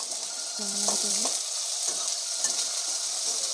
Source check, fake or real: real